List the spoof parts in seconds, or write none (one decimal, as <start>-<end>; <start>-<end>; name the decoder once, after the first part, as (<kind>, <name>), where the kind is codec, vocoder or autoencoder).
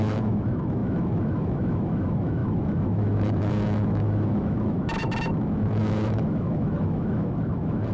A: 0.0-7.9 (autoencoder, DAC-VAE)